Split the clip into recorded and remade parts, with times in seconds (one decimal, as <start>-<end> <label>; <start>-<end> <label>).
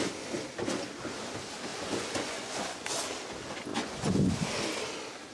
0.0-1.7 recorded; 1.7-2.9 remade; 2.9-3.7 recorded; 3.7-4.3 remade; 4.3-5.3 recorded